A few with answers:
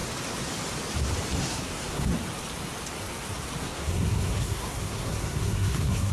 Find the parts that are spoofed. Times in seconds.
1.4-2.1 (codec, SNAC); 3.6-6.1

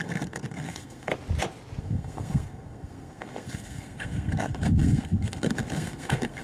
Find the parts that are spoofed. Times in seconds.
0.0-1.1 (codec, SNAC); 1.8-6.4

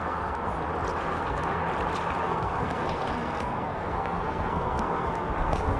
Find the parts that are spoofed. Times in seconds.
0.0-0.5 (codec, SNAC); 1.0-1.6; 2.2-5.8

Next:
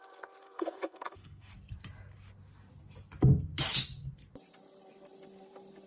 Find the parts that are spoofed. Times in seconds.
0.4-1.5 (codec, SNAC)

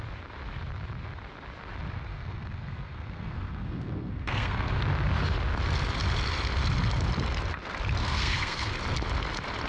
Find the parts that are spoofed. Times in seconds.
2.1-4.8 (codec, SNAC); 8.0-8.7

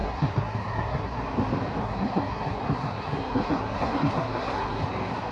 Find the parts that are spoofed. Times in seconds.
0.0-1.2 (codec, SNAC); 1.8-4.8

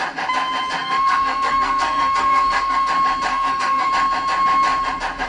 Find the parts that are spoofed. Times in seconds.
0.8-2.9 (codec, SNAC); 3.3-3.9